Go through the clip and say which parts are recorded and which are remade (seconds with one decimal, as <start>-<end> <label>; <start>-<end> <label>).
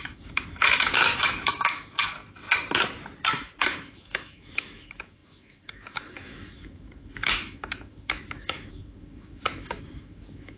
0.0-2.2 remade; 2.2-3.6 recorded; 3.6-10.6 remade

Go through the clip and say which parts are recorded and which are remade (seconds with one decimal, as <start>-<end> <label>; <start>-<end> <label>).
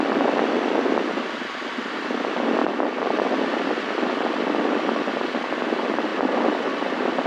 0.0-7.3 recorded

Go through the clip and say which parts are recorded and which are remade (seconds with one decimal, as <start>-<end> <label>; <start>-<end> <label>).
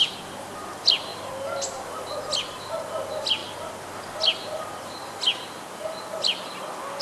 0.0-7.0 recorded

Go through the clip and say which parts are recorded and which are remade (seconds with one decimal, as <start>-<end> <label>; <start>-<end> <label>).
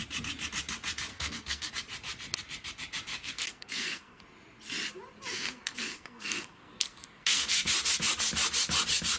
0.0-1.1 recorded; 1.1-1.7 remade; 1.7-3.1 recorded; 3.1-4.2 remade; 4.2-5.3 recorded; 5.3-7.7 remade; 7.7-9.2 recorded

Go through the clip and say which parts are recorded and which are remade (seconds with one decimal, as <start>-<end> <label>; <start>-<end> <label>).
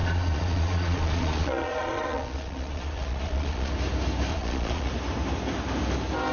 0.0-3.7 remade; 3.7-4.3 recorded; 4.3-4.9 remade; 4.9-6.3 recorded